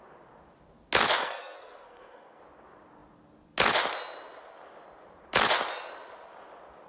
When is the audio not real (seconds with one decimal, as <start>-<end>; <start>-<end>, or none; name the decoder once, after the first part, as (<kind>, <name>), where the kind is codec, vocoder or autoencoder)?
1.2-2.4 (codec, SNAC)